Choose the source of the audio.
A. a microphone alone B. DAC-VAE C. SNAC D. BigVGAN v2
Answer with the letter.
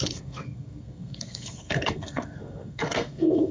C